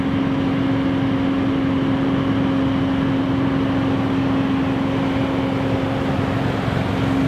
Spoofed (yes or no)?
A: no